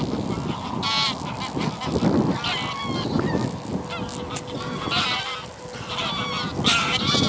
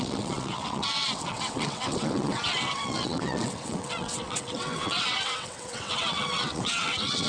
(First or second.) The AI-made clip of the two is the second